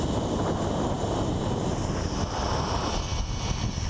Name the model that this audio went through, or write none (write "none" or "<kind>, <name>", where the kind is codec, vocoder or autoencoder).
none